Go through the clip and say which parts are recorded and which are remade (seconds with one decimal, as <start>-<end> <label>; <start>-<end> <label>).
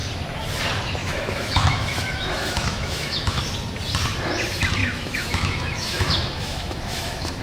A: 0.0-1.0 recorded; 1.0-3.4 remade; 3.4-4.8 recorded; 4.8-7.4 remade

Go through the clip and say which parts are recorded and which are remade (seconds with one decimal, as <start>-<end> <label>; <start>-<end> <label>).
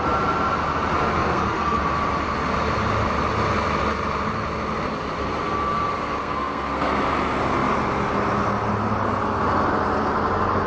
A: 0.0-1.2 recorded; 1.2-1.8 remade; 1.8-6.2 recorded; 6.2-7.0 remade; 7.0-10.7 recorded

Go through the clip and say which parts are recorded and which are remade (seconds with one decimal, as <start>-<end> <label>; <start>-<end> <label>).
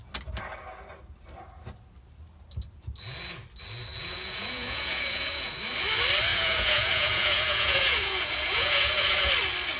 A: 0.0-3.9 recorded; 3.9-5.6 remade; 5.6-6.3 recorded; 6.3-9.3 remade; 9.3-9.8 recorded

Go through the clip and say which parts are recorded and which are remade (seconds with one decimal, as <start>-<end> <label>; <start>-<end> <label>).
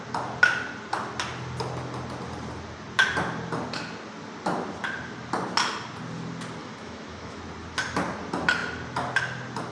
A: 0.0-6.6 recorded; 6.6-7.4 remade; 7.4-9.7 recorded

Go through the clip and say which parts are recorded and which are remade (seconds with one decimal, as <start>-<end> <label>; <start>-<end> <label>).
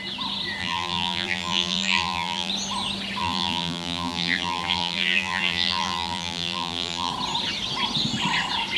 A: 0.0-0.6 recorded; 0.6-2.5 remade; 2.5-3.2 recorded; 3.2-7.1 remade; 7.1-8.8 recorded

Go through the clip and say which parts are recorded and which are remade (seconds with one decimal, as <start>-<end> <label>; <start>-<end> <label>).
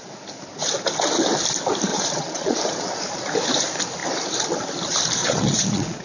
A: 0.0-1.9 recorded; 1.9-2.6 remade; 2.6-5.2 recorded; 5.2-6.0 remade